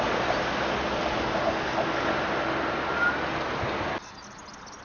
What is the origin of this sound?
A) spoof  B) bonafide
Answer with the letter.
B